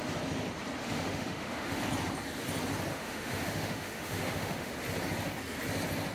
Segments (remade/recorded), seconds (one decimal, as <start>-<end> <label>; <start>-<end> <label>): 0.0-0.8 recorded; 0.8-1.8 remade; 1.8-2.9 recorded; 2.9-4.7 remade; 4.7-6.1 recorded